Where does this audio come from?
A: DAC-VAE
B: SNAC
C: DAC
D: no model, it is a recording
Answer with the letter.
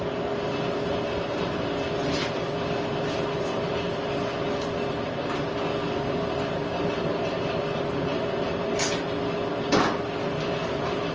D